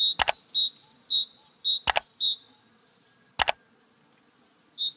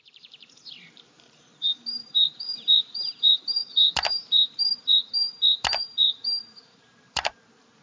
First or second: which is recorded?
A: first